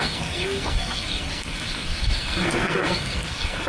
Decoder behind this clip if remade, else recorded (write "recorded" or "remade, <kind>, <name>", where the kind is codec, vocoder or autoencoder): remade, codec, SNAC